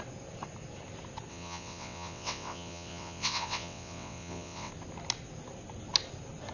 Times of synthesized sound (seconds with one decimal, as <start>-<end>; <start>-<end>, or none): 1.3-4.7